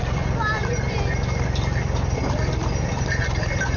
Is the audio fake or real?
fake